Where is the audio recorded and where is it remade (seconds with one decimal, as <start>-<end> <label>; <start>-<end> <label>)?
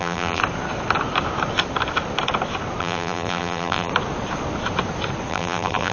0.0-0.4 remade; 0.4-2.8 recorded; 2.8-3.9 remade; 3.9-5.3 recorded; 5.3-5.9 remade